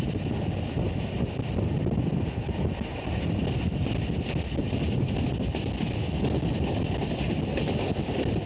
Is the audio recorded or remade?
recorded